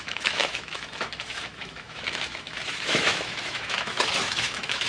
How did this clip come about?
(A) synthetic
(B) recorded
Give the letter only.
A